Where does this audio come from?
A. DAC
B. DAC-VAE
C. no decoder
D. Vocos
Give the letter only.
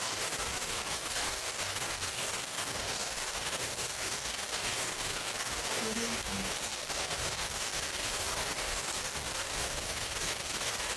A